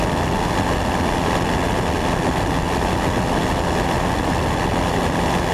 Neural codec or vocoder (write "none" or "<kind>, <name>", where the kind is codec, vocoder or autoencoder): none